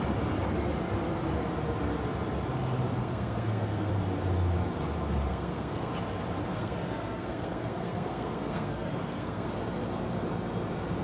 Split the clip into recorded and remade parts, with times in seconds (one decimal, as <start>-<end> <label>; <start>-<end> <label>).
0.0-3.0 recorded; 3.0-3.9 remade; 3.9-5.3 recorded; 5.3-5.9 remade; 5.9-6.5 recorded; 6.5-9.5 remade; 9.5-11.0 recorded

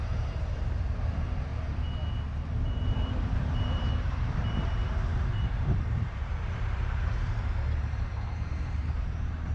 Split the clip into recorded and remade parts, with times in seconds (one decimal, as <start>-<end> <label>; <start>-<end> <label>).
0.0-1.5 remade; 1.5-2.1 recorded; 2.1-9.5 remade

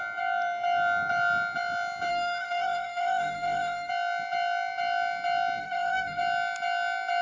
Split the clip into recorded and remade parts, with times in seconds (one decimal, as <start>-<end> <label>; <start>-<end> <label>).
0.0-2.1 recorded; 2.1-3.9 remade; 3.9-5.6 recorded; 5.6-6.2 remade; 6.2-7.2 recorded